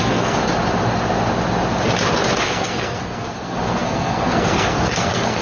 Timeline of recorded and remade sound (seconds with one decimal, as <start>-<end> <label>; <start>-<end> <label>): 0.0-0.4 remade; 0.4-2.4 recorded; 2.4-5.4 remade